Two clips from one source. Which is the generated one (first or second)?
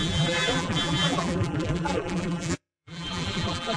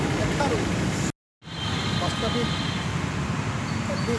first